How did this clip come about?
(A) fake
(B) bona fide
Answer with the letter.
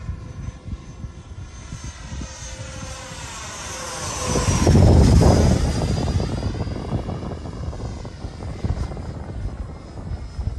B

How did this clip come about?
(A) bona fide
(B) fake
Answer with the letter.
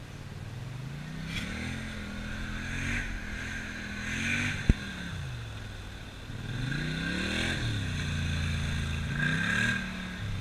A